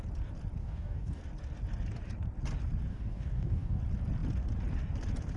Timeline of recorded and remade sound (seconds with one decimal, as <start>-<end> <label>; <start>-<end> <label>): 0.0-0.6 recorded; 0.6-1.2 remade; 1.2-2.9 recorded; 2.9-3.8 remade; 3.8-5.4 recorded